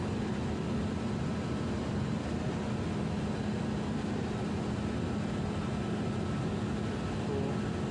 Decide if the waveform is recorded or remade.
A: recorded